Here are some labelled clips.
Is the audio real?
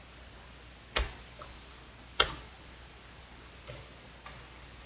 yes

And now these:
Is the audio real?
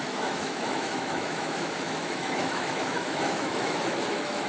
no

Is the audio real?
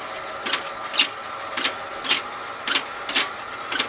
yes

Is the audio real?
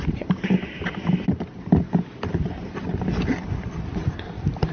yes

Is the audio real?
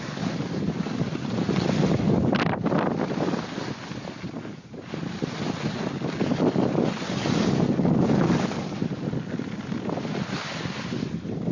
yes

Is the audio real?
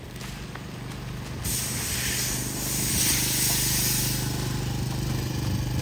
yes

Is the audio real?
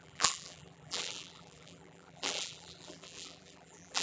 no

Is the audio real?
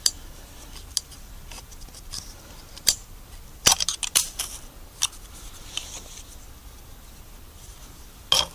yes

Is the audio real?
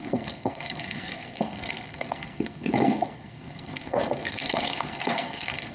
no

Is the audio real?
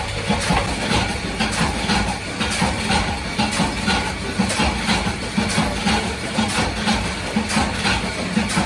yes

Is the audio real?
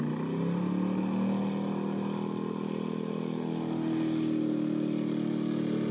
yes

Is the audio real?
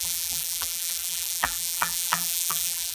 no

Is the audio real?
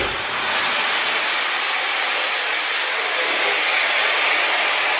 yes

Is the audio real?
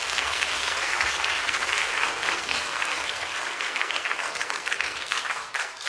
no